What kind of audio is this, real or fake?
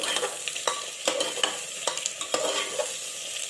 real